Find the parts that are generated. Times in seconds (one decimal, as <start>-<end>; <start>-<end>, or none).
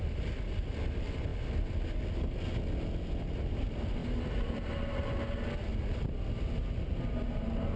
1.3-2.4; 4.0-4.7